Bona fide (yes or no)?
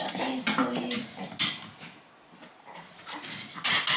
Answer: yes